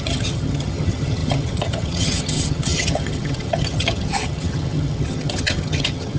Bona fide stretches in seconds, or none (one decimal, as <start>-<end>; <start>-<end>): none